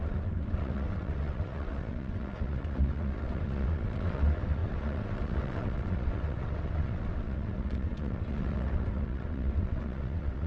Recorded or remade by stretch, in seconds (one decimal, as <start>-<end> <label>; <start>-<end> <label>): 0.0-10.5 remade